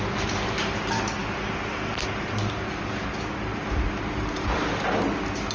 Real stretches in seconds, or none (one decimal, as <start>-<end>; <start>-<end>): 0.0-5.5